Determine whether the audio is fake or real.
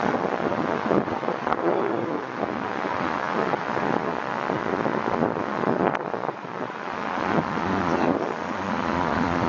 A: fake